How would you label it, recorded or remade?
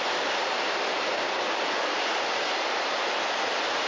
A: recorded